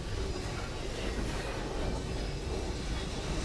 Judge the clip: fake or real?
real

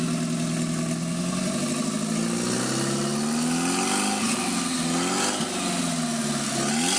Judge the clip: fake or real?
real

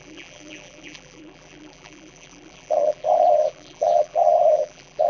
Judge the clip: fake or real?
fake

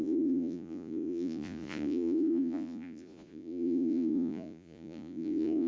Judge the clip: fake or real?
fake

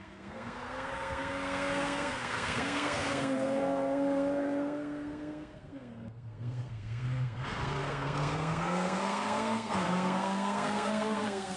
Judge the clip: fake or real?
fake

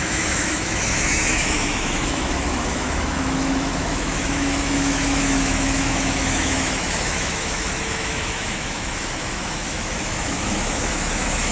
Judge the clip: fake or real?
fake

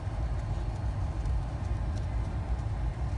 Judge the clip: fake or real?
real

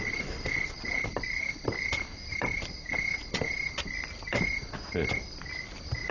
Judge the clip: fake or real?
real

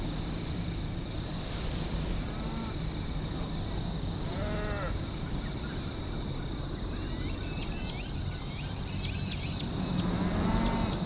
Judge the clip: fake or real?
real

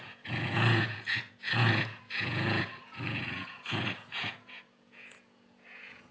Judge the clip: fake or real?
fake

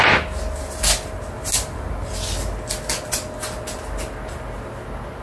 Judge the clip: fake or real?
real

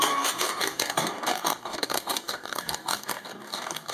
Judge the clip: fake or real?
fake